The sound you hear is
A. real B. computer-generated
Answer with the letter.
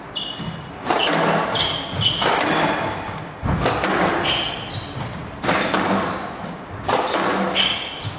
A